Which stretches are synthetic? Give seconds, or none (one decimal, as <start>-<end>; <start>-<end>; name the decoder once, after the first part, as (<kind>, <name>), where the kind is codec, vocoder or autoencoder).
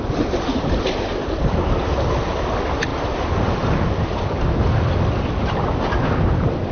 none